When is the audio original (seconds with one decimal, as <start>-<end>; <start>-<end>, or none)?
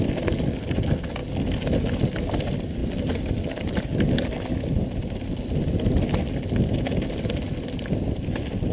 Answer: 0.0-8.7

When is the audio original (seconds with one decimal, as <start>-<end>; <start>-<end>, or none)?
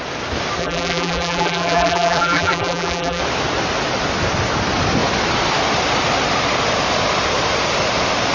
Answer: 0.0-0.6; 3.2-8.3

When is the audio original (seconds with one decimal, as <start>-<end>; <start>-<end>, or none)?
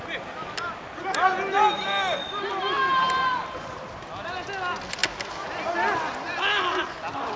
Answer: 0.0-7.4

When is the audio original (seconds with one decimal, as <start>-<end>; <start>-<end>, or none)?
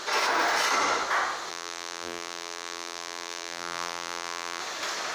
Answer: 0.0-1.5; 4.6-5.1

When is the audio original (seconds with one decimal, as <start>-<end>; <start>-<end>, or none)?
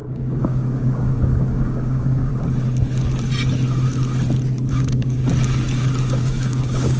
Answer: 2.3-4.7; 5.2-6.1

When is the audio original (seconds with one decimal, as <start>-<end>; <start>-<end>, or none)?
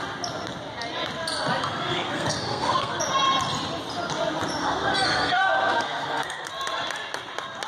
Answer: 0.0-1.6; 3.0-4.6; 6.5-7.7